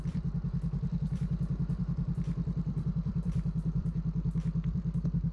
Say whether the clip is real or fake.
fake